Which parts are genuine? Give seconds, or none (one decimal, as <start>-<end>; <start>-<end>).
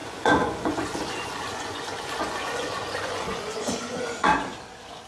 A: 4.3-5.1